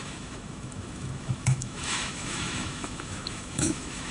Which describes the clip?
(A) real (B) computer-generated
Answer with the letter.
B